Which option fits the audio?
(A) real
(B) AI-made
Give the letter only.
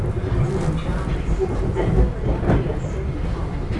A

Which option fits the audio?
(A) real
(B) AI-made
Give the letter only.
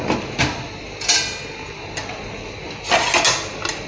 A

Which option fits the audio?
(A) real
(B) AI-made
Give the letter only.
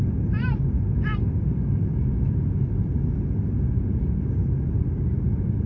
A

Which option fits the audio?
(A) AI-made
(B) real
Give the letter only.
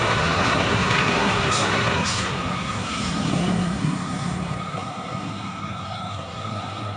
A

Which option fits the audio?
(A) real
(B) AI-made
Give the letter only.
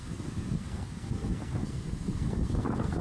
B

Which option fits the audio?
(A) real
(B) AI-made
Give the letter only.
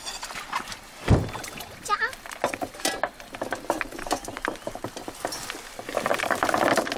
A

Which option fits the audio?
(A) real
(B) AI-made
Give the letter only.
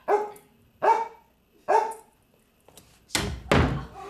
A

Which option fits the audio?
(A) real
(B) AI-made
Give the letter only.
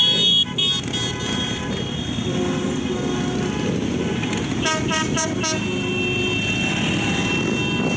A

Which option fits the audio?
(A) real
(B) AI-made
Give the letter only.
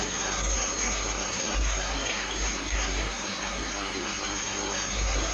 B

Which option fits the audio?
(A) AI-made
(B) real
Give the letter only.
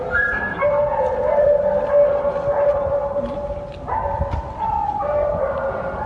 B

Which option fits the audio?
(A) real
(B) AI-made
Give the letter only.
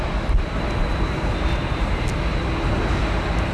A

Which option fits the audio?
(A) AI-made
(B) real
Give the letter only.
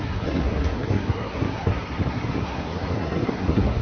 A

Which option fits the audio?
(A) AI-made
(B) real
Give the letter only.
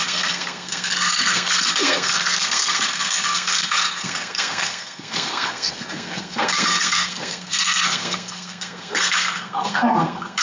A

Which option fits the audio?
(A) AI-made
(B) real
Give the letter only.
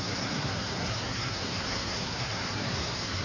A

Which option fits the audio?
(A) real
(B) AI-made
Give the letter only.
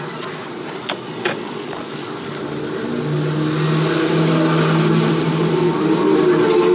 A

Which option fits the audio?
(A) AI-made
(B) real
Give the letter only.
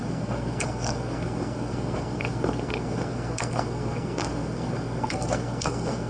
A